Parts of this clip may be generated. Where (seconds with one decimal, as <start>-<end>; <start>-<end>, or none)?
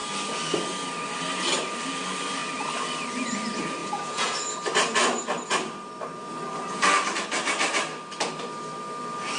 3.8-4.3